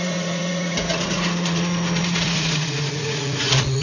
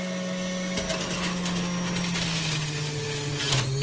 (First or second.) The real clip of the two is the second